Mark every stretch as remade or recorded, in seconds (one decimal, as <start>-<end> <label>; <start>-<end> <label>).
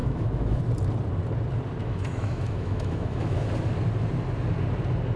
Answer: 0.0-0.6 remade; 0.6-1.8 recorded; 1.8-3.5 remade; 3.5-5.2 recorded